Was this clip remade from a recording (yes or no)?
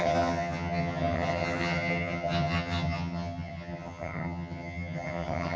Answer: yes